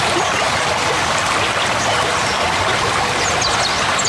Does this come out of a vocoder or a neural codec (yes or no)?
no